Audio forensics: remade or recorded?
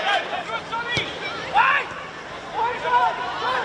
recorded